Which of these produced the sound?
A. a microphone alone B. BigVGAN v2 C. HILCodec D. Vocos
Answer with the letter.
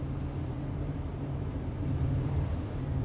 B